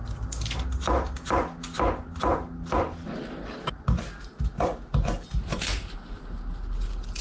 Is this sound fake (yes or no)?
no